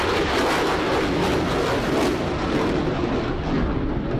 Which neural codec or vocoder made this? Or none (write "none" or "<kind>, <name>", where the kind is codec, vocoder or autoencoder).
none